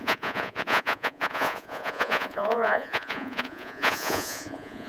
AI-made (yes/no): yes